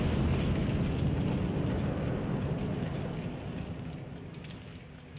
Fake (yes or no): no